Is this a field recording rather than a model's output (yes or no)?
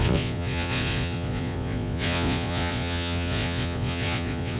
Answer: no